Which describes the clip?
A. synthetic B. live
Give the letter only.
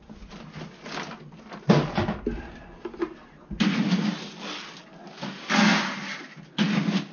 B